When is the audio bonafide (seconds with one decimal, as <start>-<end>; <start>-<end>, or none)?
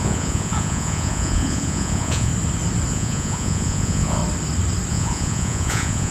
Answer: 2.3-2.9; 4.2-4.9